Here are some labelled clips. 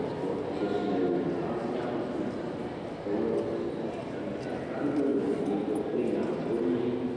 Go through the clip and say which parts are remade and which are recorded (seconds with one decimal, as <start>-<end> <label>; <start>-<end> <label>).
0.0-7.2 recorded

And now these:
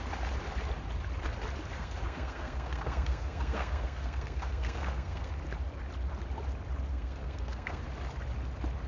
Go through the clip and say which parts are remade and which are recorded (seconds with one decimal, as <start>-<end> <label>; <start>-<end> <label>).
0.0-1.7 recorded; 1.7-5.3 remade; 5.3-6.9 recorded; 6.9-7.8 remade; 7.8-8.9 recorded

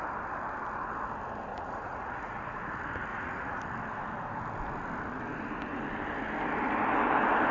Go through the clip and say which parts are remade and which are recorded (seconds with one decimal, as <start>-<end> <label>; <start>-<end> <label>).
0.0-1.5 recorded; 1.5-2.7 remade; 2.7-3.1 recorded; 3.1-3.6 remade; 3.6-7.5 recorded